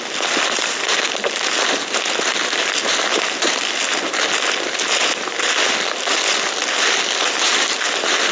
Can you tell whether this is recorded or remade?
recorded